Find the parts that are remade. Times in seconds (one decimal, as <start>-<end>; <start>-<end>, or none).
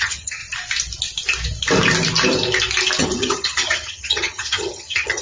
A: 0.0-0.4; 3.0-5.2